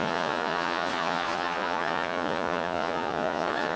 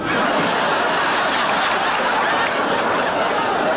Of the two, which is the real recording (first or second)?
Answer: second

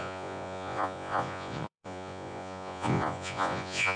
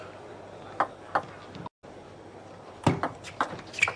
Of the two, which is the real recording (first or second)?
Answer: second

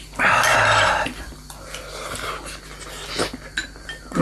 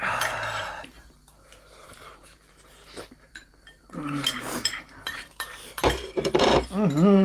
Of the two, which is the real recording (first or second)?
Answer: first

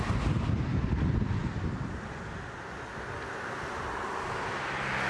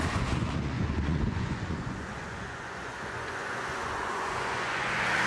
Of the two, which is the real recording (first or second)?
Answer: first